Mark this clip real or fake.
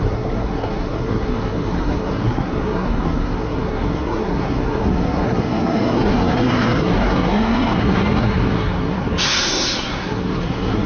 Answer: fake